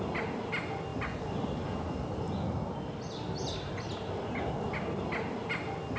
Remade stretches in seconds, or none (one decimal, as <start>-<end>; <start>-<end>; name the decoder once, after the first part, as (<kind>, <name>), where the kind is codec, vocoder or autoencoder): none